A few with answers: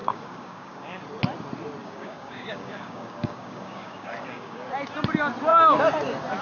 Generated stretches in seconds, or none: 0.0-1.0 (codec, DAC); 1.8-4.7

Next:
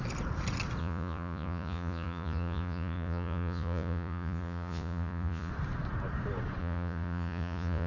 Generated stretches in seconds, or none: 0.8-5.5 (vocoder, Vocos); 6.6-7.9

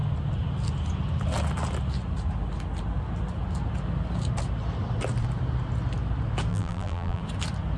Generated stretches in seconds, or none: 6.5-7.2 (vocoder, BigVGAN v2)